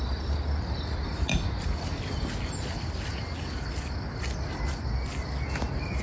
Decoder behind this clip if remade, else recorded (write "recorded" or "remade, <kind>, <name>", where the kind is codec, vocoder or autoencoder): recorded